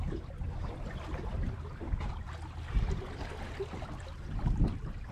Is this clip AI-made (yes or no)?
no